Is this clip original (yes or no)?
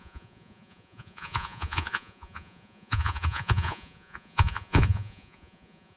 no